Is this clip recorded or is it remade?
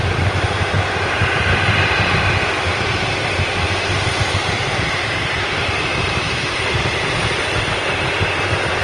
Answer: remade